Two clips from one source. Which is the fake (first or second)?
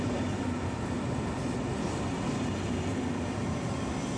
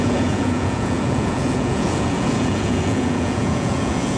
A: second